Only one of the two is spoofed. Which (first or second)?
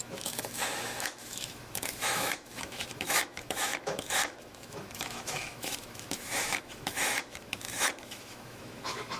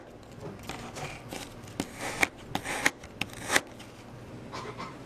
first